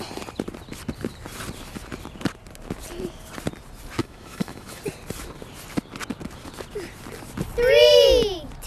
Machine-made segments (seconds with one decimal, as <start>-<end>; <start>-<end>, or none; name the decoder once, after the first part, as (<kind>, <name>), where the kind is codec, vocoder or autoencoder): 4.0-4.8 (autoencoder, DAC-VAE)

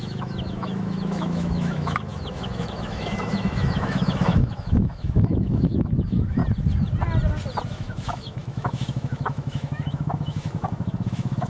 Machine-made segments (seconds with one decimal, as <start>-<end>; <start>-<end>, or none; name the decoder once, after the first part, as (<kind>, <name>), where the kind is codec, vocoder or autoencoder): 0.0-6.4 (autoencoder, DAC-VAE); 7.7-11.5

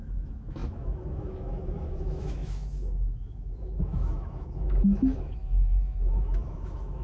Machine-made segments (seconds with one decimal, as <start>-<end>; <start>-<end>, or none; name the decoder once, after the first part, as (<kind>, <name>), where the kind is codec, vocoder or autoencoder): 0.0-7.0 (autoencoder, DAC-VAE)

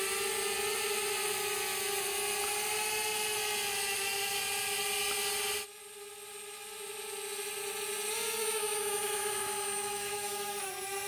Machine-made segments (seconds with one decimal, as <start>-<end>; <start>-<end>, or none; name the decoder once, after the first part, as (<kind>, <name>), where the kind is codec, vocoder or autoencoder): 8.4-10.7 (autoencoder, DAC-VAE)

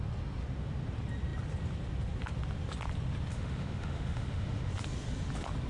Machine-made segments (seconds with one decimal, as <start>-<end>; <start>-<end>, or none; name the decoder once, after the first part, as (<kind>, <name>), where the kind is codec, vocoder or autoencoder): 3.3-4.7 (autoencoder, DAC-VAE)

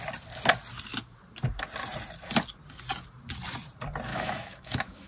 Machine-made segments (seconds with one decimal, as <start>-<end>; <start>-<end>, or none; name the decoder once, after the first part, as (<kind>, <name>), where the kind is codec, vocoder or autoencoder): 4.1-5.1 (autoencoder, DAC-VAE)

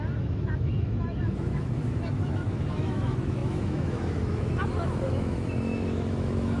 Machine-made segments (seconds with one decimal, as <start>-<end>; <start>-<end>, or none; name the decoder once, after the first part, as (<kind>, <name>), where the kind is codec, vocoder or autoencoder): 0.0-6.6 (autoencoder, DAC-VAE)